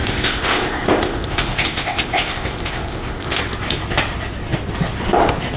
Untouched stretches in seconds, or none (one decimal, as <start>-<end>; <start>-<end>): 3.4-5.6

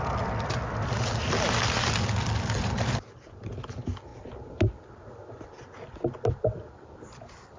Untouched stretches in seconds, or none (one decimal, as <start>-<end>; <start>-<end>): 0.0-7.6

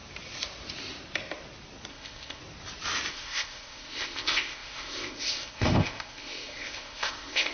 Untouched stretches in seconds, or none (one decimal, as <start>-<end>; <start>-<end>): 0.0-1.9; 2.4-3.1

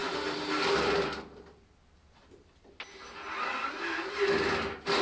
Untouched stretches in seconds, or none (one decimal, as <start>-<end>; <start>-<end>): 0.0-5.0

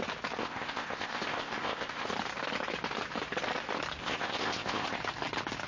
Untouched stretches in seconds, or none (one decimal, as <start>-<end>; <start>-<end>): 0.0-0.4; 2.1-4.0; 5.0-5.7

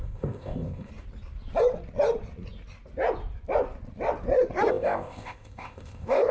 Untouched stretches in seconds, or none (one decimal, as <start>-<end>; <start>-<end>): 0.9-4.7